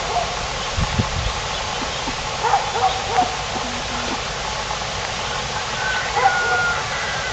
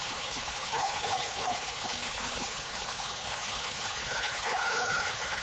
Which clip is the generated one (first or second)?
second